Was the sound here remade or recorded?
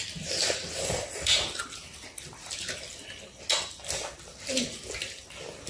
recorded